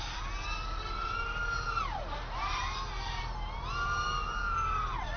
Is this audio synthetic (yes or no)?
no